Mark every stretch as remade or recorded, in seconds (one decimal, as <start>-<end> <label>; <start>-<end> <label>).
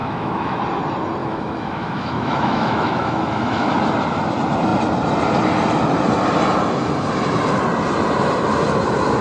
0.0-0.6 remade; 0.6-1.2 recorded; 1.2-3.7 remade; 3.7-9.2 recorded